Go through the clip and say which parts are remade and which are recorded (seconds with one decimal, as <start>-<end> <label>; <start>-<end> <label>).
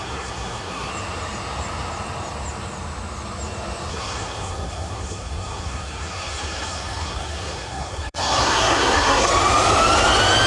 0.0-0.9 remade; 0.9-3.9 recorded; 3.9-9.3 remade; 9.3-10.5 recorded